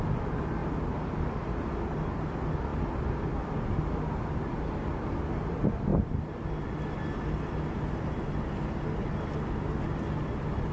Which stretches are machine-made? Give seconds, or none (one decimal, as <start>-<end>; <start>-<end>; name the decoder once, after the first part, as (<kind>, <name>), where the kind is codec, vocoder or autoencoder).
none